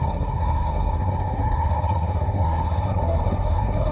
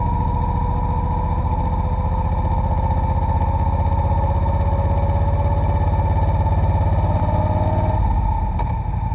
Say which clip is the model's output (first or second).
first